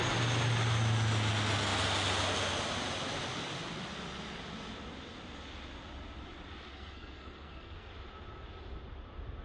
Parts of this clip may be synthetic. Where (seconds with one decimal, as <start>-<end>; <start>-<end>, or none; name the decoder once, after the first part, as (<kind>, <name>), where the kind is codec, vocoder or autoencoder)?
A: 6.7-7.9 (codec, SNAC)